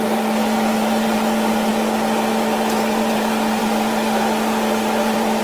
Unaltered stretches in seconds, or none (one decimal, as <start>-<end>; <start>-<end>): 1.7-2.3